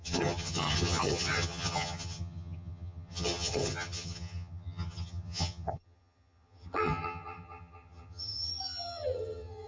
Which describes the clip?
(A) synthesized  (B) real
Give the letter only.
A